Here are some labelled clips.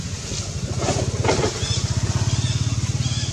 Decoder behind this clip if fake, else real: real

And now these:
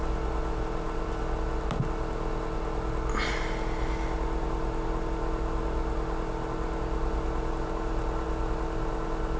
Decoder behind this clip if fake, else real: real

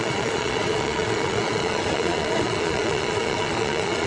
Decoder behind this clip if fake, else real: fake, vocoder, Vocos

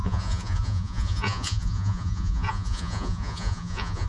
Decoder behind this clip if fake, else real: fake, vocoder, Vocos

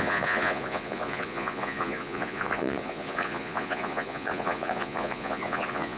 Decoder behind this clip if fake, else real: fake, vocoder, Vocos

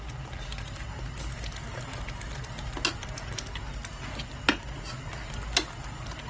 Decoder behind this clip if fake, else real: real